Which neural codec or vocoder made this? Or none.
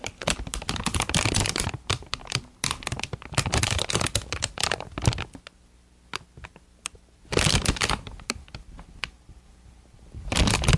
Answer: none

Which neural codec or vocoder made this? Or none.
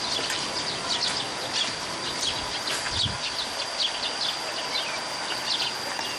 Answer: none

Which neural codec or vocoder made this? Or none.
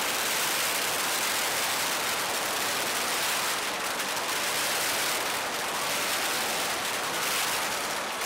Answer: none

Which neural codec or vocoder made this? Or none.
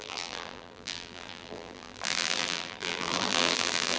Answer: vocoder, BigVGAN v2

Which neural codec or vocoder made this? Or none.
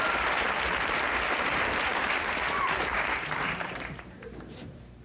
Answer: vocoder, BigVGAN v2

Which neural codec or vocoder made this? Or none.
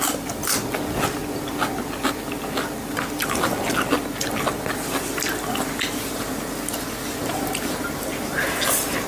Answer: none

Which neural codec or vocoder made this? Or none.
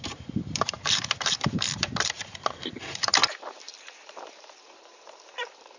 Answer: vocoder, BigVGAN v2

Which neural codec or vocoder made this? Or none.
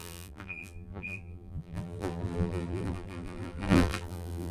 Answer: vocoder, BigVGAN v2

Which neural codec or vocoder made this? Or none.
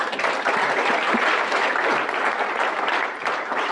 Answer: vocoder, BigVGAN v2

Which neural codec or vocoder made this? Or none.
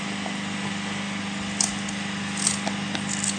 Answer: none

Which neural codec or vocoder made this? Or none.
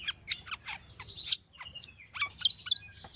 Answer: none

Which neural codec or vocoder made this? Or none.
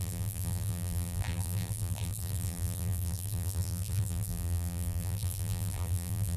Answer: vocoder, BigVGAN v2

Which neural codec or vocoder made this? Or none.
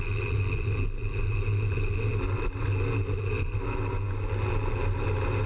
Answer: none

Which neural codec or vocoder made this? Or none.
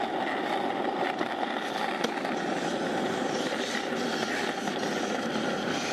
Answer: none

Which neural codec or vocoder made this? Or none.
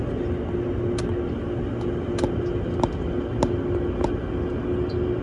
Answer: none